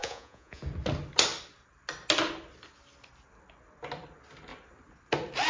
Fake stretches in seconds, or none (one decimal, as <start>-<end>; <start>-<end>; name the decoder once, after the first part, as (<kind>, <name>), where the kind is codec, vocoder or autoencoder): 0.0-0.6 (vocoder, Vocos)